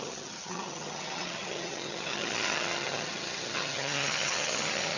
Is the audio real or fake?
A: fake